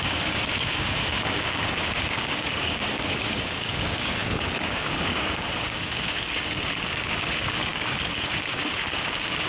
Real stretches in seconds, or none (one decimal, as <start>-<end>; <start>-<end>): none